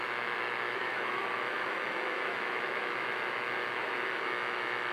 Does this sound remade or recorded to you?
remade